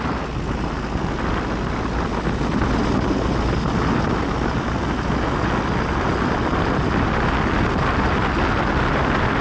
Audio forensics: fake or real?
real